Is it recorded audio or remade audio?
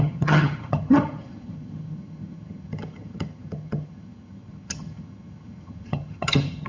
remade